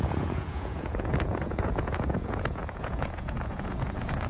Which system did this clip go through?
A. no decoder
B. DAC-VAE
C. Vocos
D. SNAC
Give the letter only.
C